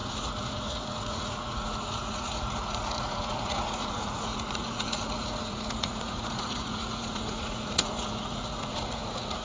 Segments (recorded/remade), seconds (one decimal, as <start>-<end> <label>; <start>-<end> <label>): 0.0-9.4 remade